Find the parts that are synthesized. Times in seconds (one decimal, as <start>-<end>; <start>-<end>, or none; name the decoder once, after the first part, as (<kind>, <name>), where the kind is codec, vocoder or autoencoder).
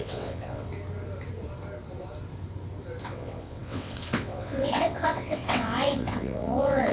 0.0-0.7 (vocoder, WaveNeXt); 3.0-6.9